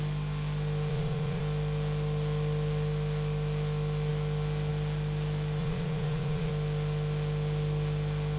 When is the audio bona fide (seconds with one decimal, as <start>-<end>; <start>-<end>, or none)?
0.0-0.9; 1.4-5.6; 6.5-8.4